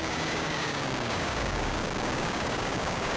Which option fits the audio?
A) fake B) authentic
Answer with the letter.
A